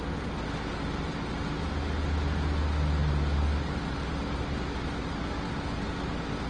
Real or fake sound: real